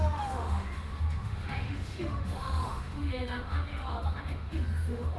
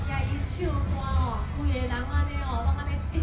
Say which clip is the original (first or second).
second